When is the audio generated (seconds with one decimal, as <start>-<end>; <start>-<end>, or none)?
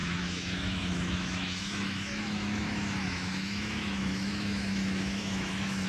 0.0-5.9